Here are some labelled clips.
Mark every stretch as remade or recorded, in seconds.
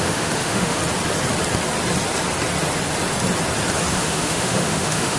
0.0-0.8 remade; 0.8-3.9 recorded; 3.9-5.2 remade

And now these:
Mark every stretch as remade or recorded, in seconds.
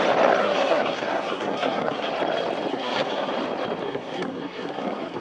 0.0-0.4 recorded; 0.4-2.1 remade; 2.1-2.7 recorded; 2.7-3.3 remade; 3.3-3.8 recorded; 3.8-5.2 remade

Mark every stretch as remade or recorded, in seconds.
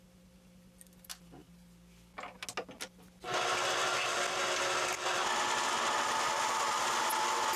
0.0-7.6 recorded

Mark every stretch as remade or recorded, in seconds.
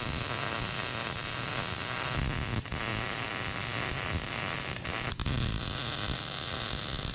0.0-7.1 recorded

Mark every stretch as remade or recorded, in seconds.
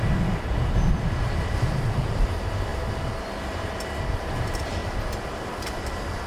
0.0-1.7 recorded; 1.7-2.7 remade; 2.7-4.2 recorded; 4.2-4.8 remade; 4.8-5.3 recorded; 5.3-6.3 remade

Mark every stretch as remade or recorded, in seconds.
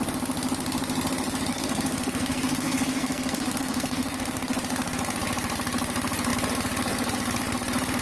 0.0-1.5 recorded; 1.5-4.5 remade; 4.5-8.0 recorded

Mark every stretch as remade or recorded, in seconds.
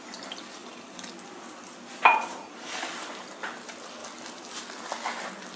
0.0-2.3 recorded; 2.3-3.0 remade; 3.0-4.0 recorded; 4.0-4.6 remade; 4.6-5.6 recorded